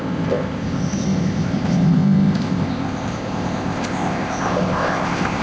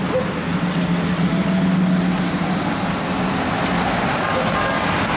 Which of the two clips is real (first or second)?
second